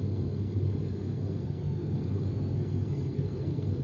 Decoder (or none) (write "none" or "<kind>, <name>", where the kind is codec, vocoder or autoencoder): codec, SNAC